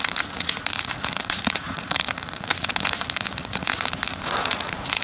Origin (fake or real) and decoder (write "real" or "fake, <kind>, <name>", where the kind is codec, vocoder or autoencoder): fake, vocoder, Vocos